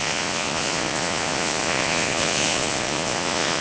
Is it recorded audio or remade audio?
remade